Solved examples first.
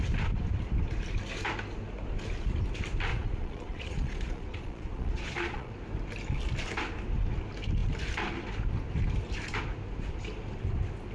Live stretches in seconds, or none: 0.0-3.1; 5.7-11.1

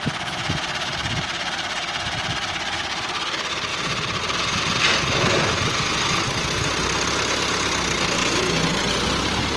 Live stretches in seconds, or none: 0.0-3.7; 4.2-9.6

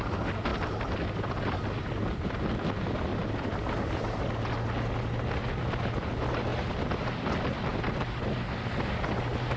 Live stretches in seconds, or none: 0.5-2.6; 3.1-5.3; 6.5-7.2; 7.7-9.6